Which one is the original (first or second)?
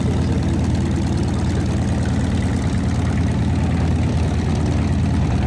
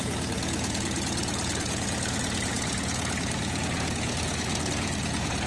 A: first